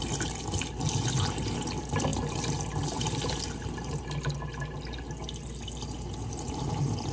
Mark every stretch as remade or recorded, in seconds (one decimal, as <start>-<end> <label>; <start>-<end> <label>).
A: 0.0-7.1 recorded